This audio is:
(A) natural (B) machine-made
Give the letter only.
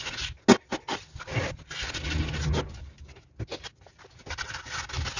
A